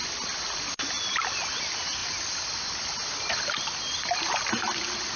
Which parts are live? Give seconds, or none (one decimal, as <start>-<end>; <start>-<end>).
0.0-5.2